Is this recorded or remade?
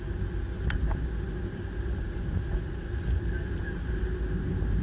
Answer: recorded